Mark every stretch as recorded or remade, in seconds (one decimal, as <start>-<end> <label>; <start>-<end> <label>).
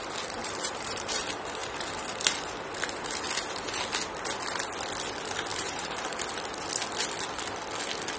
0.0-0.4 recorded; 0.4-1.2 remade; 1.2-5.5 recorded; 5.5-6.2 remade; 6.2-8.2 recorded